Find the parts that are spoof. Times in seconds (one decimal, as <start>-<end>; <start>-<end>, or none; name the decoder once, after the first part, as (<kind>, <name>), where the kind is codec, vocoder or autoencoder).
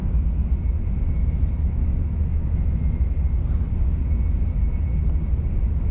1.2-2.6 (autoencoder, DAC-VAE)